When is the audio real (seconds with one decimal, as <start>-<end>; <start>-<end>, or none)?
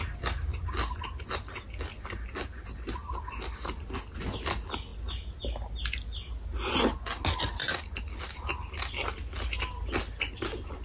0.0-10.8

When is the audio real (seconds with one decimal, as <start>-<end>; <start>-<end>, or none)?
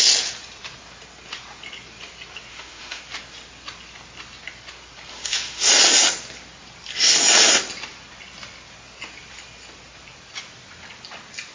0.0-2.5; 3.0-5.1; 5.7-11.5